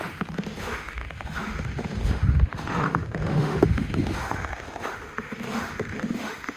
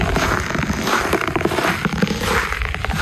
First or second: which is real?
second